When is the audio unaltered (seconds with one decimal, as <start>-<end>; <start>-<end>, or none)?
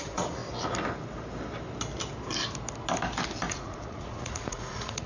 0.4-3.5